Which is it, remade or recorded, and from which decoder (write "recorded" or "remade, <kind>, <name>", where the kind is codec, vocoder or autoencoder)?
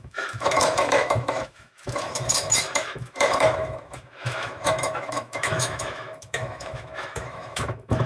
remade, autoencoder, DAC-VAE